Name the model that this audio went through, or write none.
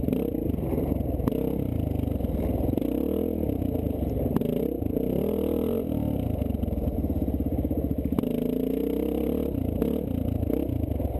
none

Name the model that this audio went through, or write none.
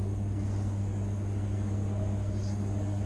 codec, SNAC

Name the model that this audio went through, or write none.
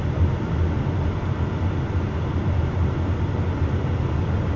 none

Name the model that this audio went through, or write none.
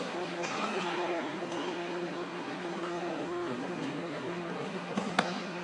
codec, SNAC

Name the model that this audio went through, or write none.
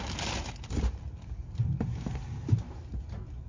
none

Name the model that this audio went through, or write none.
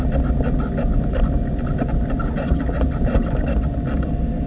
none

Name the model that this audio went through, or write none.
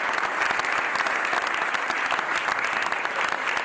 none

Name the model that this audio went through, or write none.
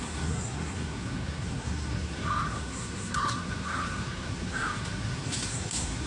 codec, SNAC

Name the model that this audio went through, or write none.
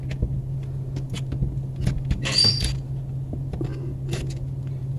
none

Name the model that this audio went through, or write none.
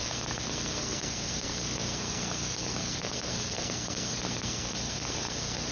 codec, SNAC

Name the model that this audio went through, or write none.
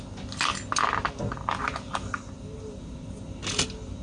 none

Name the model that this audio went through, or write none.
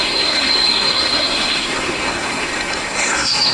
codec, SNAC